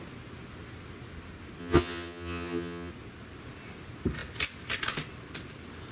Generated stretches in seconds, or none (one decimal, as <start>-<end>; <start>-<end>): 1.6-2.9